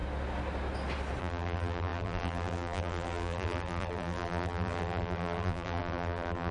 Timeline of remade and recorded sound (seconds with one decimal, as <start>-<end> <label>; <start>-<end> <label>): 0.0-1.2 recorded; 1.2-6.5 remade